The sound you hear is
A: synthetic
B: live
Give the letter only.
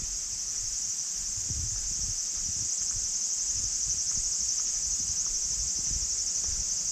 B